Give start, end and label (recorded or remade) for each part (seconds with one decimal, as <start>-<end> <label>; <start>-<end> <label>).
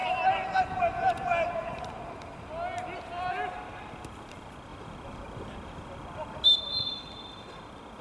0.0-8.0 recorded